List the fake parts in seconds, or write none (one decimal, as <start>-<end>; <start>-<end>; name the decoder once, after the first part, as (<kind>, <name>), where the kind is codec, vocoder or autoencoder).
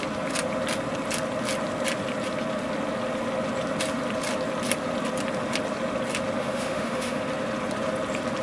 6.4-7.2 (autoencoder, DAC-VAE)